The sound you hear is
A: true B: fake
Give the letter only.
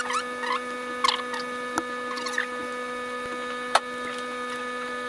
A